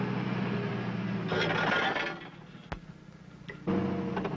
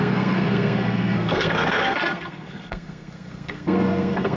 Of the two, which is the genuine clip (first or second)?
first